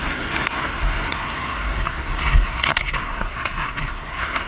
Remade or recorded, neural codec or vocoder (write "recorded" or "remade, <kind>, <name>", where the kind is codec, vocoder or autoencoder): remade, codec, SNAC